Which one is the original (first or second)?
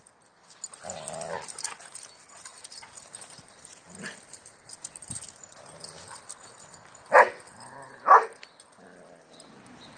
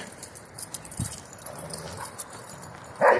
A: first